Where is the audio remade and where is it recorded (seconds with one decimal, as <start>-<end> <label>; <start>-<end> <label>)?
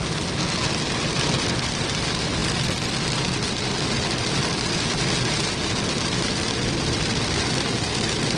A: 0.0-8.4 recorded